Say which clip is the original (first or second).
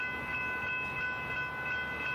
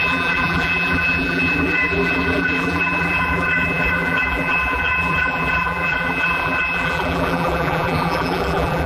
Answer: first